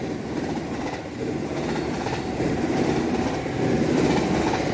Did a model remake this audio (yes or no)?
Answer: no